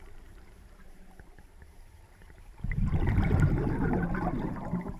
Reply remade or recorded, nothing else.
remade